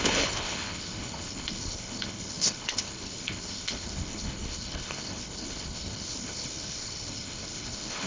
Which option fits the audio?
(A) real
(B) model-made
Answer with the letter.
B